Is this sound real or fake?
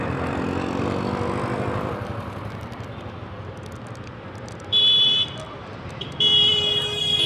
real